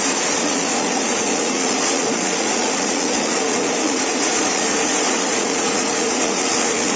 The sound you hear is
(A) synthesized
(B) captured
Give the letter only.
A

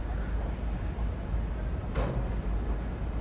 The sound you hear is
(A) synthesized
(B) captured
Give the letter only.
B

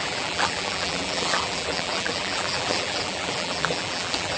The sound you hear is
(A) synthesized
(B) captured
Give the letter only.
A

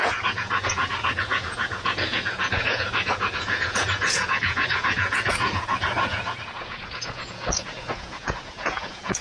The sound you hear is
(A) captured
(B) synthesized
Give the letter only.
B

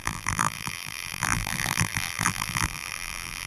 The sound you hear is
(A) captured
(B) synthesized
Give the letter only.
B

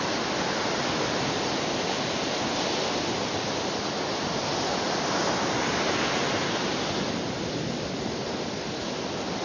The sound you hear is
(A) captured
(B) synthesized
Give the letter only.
A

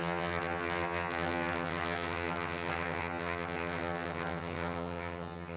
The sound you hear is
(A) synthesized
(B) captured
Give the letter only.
A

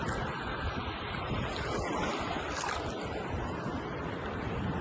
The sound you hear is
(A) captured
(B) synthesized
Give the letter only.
A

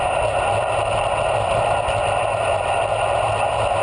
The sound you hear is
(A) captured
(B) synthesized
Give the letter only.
A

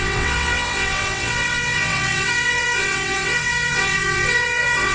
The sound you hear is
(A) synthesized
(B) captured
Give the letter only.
A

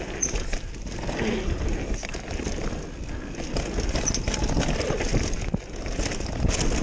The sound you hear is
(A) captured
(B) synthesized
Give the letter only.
A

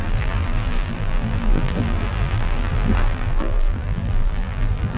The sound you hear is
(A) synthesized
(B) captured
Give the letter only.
A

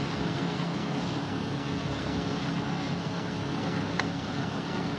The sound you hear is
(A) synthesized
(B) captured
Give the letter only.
A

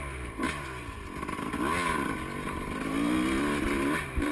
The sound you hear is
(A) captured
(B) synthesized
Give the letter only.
A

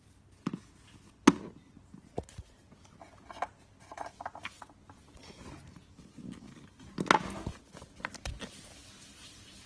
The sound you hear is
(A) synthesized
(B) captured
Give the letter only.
B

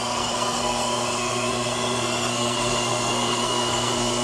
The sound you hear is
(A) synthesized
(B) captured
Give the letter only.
A